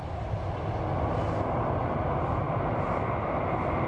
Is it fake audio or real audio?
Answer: real